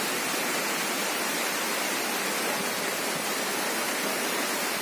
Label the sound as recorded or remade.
recorded